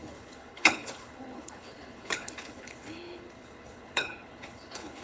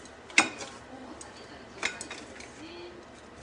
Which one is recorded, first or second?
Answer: second